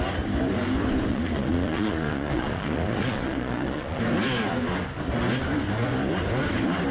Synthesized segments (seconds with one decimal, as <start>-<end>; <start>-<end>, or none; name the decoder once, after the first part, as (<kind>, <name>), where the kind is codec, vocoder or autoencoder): 1.1-4.0 (vocoder, Vocos)

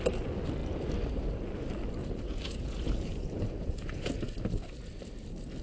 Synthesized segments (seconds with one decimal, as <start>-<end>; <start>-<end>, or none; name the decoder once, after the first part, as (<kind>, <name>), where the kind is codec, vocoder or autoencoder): 2.0-4.3 (vocoder, Vocos)

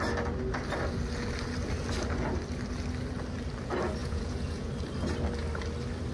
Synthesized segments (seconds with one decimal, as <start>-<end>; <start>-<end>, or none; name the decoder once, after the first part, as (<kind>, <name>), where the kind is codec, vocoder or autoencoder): 4.0-4.7 (vocoder, Vocos)

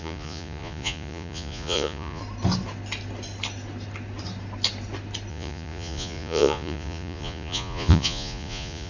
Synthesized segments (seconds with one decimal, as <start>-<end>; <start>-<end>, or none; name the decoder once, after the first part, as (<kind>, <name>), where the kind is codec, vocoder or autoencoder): 0.0-2.2 (vocoder, Vocos); 5.3-8.9

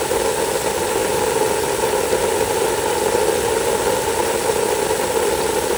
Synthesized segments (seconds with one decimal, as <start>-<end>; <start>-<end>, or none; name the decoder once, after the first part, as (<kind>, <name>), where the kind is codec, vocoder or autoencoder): none

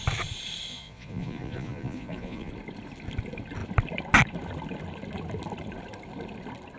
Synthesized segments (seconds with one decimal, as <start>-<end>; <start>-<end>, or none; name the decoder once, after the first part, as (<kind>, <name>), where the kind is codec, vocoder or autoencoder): 0.7-2.5 (vocoder, Vocos)

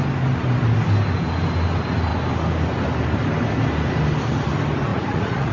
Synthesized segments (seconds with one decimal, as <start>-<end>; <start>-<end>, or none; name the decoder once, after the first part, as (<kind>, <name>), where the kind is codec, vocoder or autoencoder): 4.9-5.5 (vocoder, Vocos)

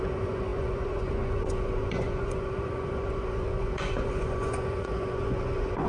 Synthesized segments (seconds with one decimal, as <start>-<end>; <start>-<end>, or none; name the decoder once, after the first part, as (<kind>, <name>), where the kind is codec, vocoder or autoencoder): 0.0-5.9 (vocoder, Vocos)